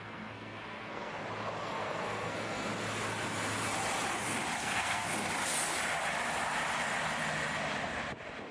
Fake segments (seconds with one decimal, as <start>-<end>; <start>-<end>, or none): 0.0-1.1; 1.6-2.7; 4.6-5.1